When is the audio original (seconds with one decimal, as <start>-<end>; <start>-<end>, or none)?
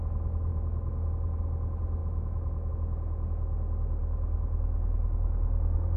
0.0-0.5; 1.1-2.0; 2.7-6.0